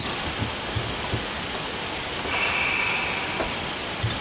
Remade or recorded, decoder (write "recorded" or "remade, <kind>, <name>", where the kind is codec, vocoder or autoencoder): recorded